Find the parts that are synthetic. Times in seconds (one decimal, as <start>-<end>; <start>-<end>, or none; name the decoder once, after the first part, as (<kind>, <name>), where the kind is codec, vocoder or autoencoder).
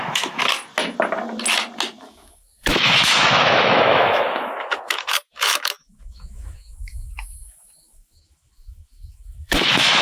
0.0-0.4 (autoencoder, DAC-VAE); 2.0-10.0